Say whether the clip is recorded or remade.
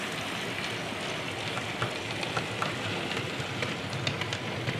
remade